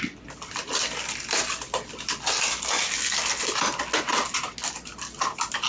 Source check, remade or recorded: recorded